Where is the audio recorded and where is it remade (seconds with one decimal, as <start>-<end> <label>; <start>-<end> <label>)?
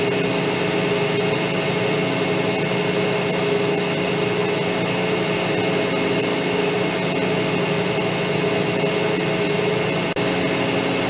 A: 0.0-6.3 recorded; 6.3-6.9 remade; 6.9-11.1 recorded